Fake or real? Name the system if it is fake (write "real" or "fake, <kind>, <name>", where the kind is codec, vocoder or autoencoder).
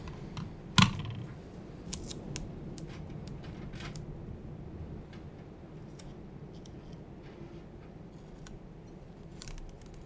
real